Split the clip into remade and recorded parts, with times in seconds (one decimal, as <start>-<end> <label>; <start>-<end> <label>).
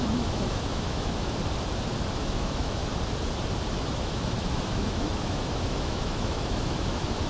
0.0-1.4 remade; 1.4-2.1 recorded; 2.1-2.8 remade; 2.8-3.8 recorded; 3.8-7.3 remade